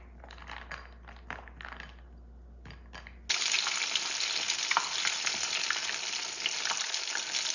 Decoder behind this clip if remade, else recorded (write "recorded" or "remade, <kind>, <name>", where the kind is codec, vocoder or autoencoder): recorded